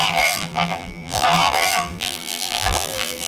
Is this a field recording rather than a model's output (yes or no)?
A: no